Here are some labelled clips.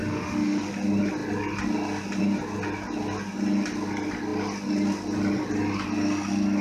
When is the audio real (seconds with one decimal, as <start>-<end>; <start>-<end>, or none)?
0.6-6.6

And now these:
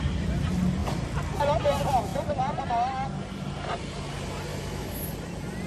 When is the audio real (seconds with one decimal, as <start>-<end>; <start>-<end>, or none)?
0.0-4.5; 5.0-5.7

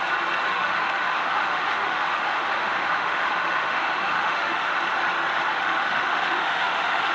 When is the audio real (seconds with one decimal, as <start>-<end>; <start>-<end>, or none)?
0.0-0.5; 4.8-5.5